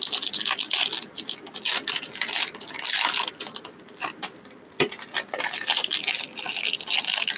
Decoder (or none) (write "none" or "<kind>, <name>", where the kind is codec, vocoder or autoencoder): none